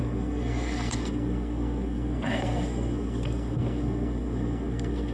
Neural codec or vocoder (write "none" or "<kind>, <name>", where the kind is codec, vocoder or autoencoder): codec, SNAC